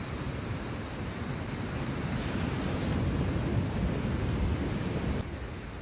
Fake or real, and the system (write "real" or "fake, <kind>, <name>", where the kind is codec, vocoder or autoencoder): real